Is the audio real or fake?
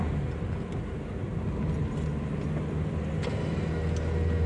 real